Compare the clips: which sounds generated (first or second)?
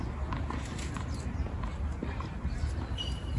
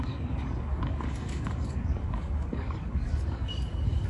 second